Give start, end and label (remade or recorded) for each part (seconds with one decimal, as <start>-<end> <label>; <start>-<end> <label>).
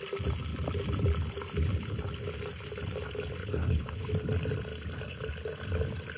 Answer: 0.0-3.4 recorded; 3.4-4.1 remade; 4.1-6.2 recorded